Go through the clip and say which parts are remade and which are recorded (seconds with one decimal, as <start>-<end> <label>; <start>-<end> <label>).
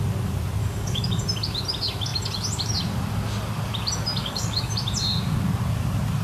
0.0-0.6 recorded; 0.6-1.2 remade; 1.2-4.2 recorded; 4.2-4.7 remade; 4.7-6.2 recorded